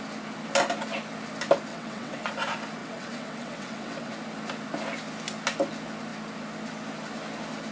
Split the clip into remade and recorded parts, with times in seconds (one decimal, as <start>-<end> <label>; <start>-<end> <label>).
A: 0.0-1.7 recorded; 1.7-2.3 remade; 2.3-2.8 recorded; 2.8-4.1 remade; 4.1-7.7 recorded